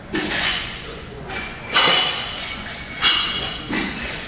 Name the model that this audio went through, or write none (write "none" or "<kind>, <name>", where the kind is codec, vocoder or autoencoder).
vocoder, Vocos